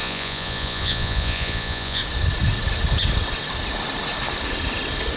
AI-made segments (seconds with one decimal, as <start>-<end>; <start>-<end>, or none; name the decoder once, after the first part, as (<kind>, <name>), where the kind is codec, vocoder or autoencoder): 0.0-2.0 (vocoder, Vocos)

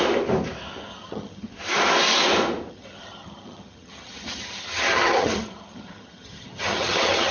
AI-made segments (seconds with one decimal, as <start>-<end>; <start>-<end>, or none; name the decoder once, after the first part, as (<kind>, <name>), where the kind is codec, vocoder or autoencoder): 0.9-1.5 (vocoder, HiFi-GAN); 2.7-7.3

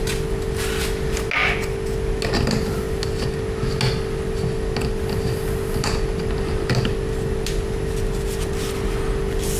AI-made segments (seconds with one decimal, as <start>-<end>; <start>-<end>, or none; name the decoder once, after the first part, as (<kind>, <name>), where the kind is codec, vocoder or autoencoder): none

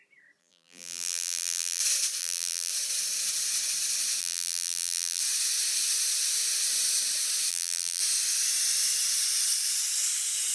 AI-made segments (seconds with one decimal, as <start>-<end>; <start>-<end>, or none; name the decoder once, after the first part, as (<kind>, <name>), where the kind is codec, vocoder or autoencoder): 0.4-1.8 (vocoder, BigVGAN v2); 2.2-2.7; 4.2-5.2; 7.5-8.0

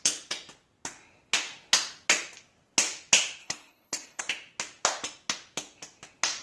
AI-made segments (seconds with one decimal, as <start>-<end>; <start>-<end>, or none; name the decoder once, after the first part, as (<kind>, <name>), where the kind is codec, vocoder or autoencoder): 3.4-4.2 (codec, HILCodec)

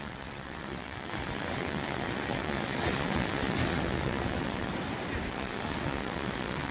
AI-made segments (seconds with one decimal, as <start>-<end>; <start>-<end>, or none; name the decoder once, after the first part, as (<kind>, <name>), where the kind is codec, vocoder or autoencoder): 0.0-4.7 (vocoder, WaveNeXt); 5.3-6.7

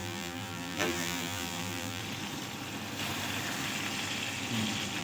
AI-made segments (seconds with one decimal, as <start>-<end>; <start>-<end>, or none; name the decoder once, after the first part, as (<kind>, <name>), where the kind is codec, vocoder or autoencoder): 0.0-2.0 (vocoder, BigVGAN v2)